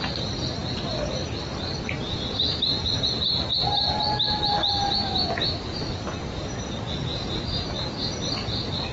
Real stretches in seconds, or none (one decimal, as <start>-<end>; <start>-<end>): 0.0-0.6; 4.5-7.1; 8.0-8.9